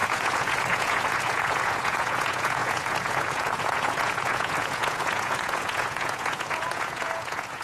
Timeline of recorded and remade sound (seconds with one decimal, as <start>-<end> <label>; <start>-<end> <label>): 0.0-7.6 remade